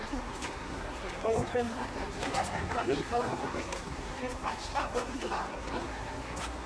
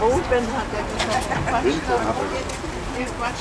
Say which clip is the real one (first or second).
second